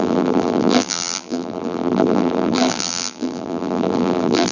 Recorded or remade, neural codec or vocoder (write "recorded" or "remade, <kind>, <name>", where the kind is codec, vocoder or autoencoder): remade, vocoder, BigVGAN v2